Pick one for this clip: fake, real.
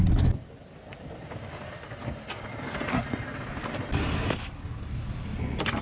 real